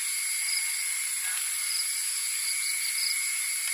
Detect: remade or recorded remade